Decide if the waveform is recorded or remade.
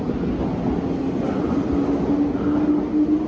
recorded